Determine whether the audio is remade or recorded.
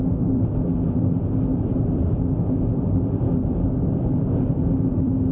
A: remade